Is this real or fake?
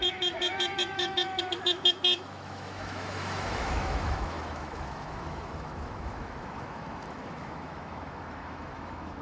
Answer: fake